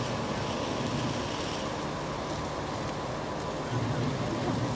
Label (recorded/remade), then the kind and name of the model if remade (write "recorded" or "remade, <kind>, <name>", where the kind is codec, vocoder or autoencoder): recorded